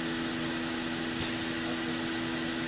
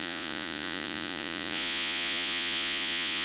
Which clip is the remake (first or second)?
second